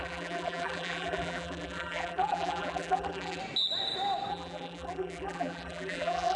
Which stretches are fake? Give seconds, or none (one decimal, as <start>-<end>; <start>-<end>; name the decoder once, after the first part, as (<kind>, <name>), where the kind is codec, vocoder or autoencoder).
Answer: 0.0-3.4 (vocoder, BigVGAN v2); 4.3-6.4